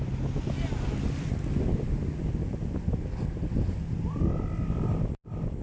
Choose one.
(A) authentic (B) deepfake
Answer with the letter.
A